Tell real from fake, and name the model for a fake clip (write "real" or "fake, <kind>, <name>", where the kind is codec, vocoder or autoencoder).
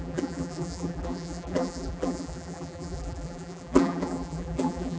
fake, vocoder, BigVGAN v2